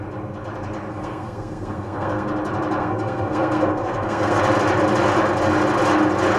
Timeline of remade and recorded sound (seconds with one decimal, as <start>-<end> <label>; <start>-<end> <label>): 0.0-0.9 recorded; 0.9-2.3 remade; 2.3-2.8 recorded; 2.8-4.4 remade; 4.4-6.4 recorded